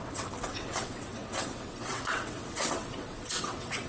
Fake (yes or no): yes